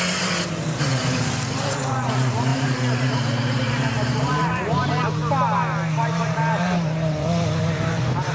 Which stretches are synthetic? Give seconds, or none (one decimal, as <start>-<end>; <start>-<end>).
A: 0.0-5.2; 5.9-8.3